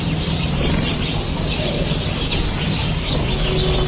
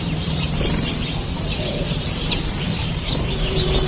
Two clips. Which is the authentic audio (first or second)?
first